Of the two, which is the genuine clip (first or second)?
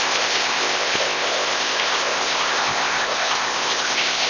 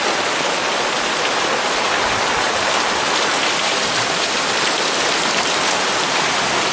second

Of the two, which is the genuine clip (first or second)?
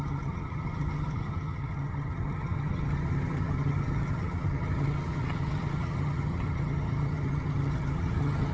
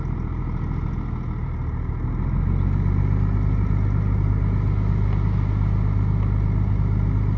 second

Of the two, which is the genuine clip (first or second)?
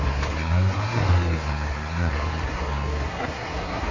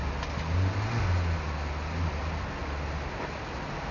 second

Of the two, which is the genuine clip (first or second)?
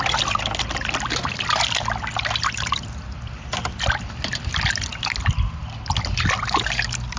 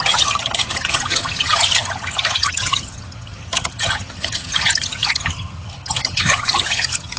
first